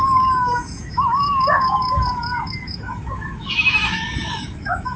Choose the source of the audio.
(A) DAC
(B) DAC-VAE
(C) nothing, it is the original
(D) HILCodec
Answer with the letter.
B